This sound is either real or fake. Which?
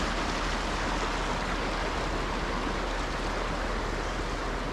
real